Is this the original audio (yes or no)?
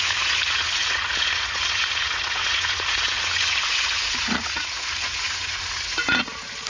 no